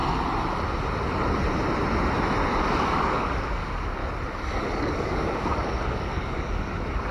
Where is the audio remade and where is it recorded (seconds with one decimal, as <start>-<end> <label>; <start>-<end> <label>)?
0.0-2.6 recorded; 2.6-4.0 remade; 4.0-4.6 recorded; 4.6-7.1 remade